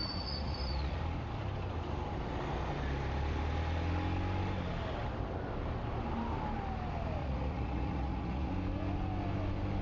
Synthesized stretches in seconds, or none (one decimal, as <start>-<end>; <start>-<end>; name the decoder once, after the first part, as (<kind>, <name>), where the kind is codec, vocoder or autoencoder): 0.0-1.0 (vocoder, Vocos); 7.2-8.5